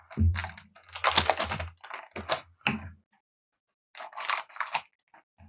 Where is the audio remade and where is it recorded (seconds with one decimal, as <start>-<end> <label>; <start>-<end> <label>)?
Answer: 0.0-5.5 recorded